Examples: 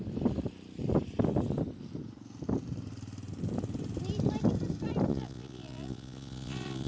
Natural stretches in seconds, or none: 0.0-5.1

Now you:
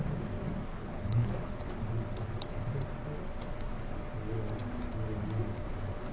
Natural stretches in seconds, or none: 0.0-0.7; 1.5-6.1

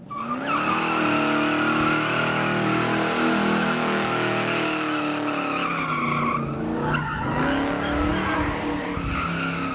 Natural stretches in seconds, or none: 0.0-9.7

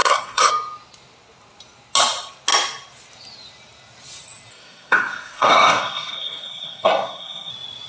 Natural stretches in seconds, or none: 0.5-4.5; 7.5-7.9

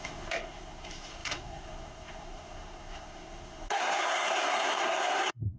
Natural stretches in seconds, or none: none

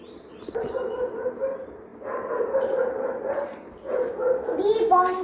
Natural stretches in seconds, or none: none